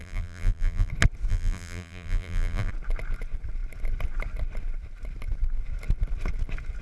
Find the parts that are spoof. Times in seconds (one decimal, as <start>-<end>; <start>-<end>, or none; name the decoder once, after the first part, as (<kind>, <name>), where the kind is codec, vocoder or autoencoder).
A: 0.0-0.9 (vocoder, BigVGAN v2); 1.3-2.7